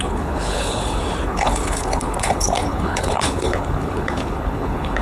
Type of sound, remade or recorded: remade